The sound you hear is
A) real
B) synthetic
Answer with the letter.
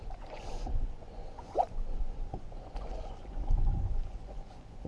B